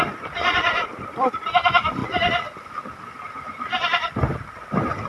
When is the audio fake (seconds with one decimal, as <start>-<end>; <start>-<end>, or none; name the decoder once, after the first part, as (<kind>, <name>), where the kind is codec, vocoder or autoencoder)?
0.0-2.0 (vocoder, BigVGAN v2)